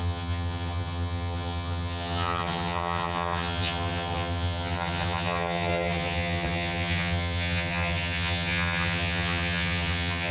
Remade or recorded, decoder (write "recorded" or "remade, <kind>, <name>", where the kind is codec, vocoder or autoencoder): remade, vocoder, HiFi-GAN